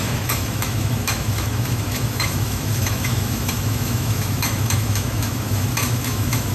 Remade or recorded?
remade